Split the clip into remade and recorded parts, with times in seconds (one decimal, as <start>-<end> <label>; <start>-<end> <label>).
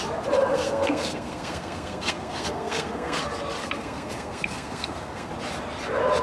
0.0-0.5 recorded; 0.5-3.2 remade; 3.2-3.6 recorded; 3.6-5.3 remade; 5.3-6.2 recorded